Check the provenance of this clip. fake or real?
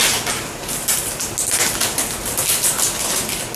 real